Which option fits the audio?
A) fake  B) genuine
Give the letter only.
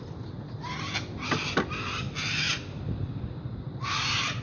B